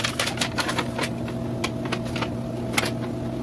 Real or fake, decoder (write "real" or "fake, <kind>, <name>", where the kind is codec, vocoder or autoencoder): real